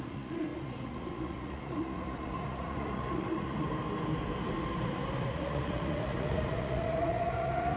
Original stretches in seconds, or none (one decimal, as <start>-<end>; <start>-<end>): 3.7-5.3